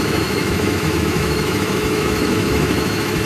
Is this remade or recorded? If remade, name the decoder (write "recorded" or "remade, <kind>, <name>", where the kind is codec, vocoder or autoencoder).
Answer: remade, autoencoder, DAC-VAE